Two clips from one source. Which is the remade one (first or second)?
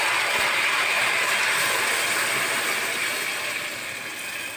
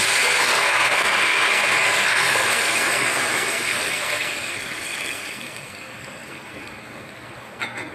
second